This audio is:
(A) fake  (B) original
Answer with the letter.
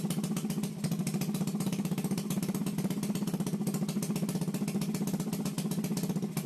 B